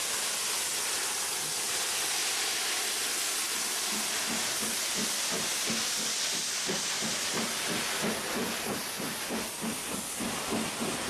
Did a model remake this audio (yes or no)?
no